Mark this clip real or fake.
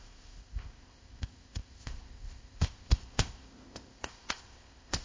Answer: fake